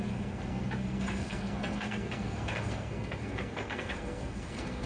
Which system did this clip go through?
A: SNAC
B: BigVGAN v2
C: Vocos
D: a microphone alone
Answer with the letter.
A